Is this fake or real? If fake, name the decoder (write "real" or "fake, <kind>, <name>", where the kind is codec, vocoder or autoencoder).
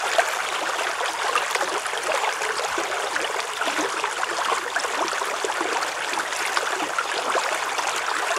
real